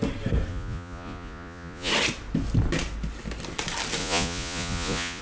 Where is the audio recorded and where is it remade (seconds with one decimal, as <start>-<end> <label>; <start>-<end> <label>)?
0.0-0.5 recorded; 0.5-1.9 remade; 1.9-4.0 recorded; 4.0-5.2 remade